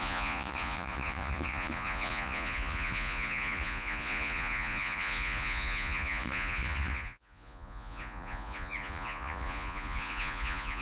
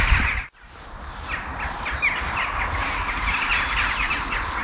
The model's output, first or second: first